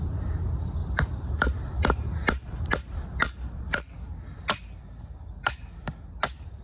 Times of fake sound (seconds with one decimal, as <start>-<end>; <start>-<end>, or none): 0.8-3.9